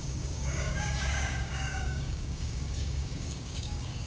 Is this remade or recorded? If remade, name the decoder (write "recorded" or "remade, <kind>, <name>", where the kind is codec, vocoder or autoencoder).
remade, codec, DAC